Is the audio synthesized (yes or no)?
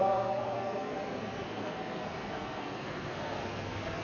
yes